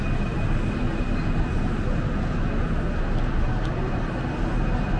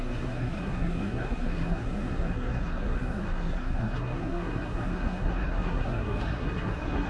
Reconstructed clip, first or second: second